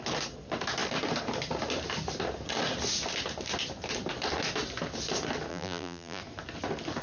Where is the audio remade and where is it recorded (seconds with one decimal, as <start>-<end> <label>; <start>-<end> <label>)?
0.0-5.5 recorded; 5.5-6.2 remade; 6.2-7.0 recorded